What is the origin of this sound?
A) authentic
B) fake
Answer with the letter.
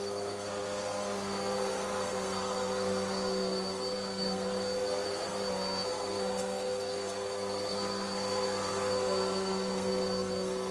B